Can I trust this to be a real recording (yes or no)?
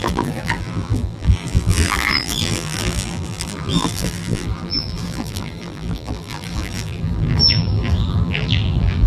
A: no